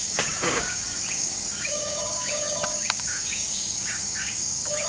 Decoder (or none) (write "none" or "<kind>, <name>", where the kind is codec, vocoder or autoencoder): codec, DAC